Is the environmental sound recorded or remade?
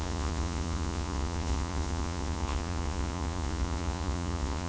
remade